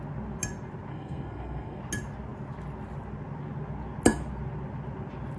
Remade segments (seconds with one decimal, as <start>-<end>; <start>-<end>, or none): 0.9-1.8